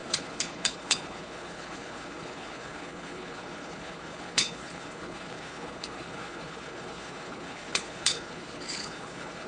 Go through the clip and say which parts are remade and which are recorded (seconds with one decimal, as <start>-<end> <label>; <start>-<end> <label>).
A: 0.0-9.5 remade